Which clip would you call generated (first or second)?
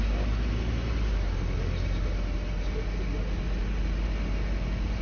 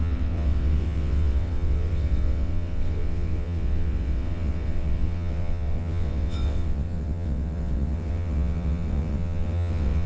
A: second